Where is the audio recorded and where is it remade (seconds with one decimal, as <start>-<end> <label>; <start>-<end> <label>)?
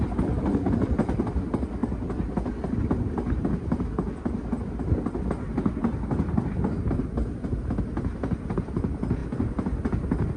0.0-10.4 recorded